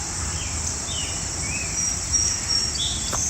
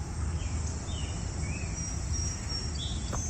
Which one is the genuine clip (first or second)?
second